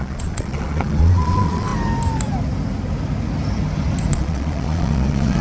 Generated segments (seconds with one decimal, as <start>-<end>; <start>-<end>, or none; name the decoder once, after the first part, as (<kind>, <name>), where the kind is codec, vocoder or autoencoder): 0.0-1.7 (vocoder, Vocos); 4.1-5.4